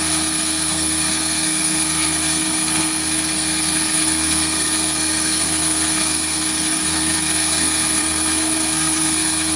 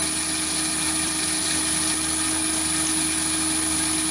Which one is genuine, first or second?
second